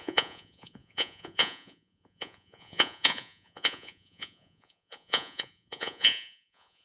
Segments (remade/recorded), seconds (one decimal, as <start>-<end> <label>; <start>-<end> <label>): 0.0-6.8 remade